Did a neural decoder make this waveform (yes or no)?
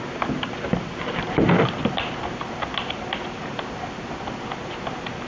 no